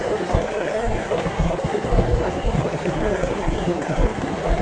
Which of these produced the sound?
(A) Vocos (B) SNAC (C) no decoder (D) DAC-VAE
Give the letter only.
B